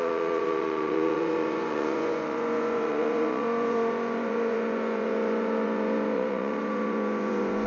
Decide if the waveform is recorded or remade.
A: remade